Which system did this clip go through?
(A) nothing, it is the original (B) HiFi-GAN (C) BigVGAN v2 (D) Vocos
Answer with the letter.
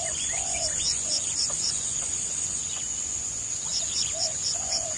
D